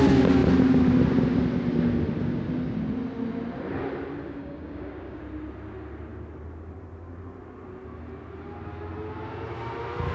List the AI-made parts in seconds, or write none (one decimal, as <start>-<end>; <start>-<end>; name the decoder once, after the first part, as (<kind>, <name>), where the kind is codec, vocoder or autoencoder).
4.4-5.2 (codec, DAC)